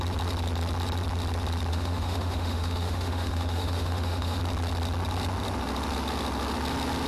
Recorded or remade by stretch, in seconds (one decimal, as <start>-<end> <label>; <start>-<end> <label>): 0.0-1.7 recorded; 1.7-4.4 remade; 4.4-7.1 recorded